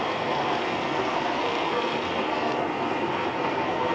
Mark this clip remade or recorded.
remade